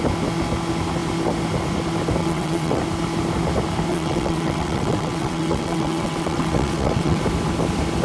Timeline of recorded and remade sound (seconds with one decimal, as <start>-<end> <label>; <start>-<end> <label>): 0.0-2.2 recorded; 2.2-2.8 remade; 2.8-3.9 recorded; 3.9-7.2 remade; 7.2-8.0 recorded